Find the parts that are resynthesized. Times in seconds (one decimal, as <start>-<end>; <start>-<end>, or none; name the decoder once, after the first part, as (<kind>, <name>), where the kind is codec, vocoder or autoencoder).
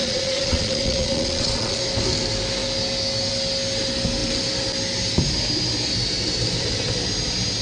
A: 0.0-1.8 (vocoder, Vocos)